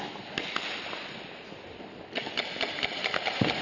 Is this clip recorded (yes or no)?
yes